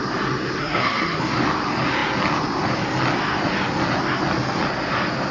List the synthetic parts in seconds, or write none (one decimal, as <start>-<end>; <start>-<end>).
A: 0.6-1.2